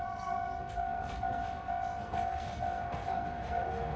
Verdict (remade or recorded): remade